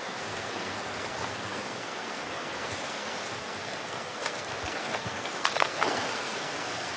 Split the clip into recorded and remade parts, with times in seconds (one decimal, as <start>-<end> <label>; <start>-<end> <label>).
0.0-7.0 remade